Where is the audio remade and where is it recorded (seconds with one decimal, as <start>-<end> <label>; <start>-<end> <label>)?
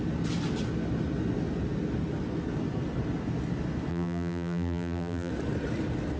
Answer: 0.0-3.9 recorded; 3.9-5.3 remade; 5.3-6.2 recorded